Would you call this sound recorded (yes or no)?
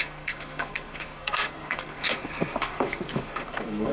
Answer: no